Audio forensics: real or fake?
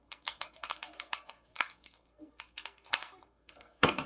fake